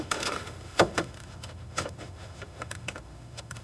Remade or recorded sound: remade